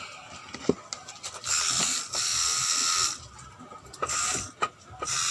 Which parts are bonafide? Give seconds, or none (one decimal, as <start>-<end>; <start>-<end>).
0.0-5.3